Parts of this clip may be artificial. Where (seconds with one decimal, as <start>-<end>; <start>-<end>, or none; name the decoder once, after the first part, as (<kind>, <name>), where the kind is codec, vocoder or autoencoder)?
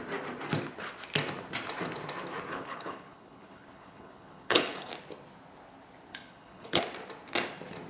2.5-4.9 (codec, HILCodec); 6.1-6.8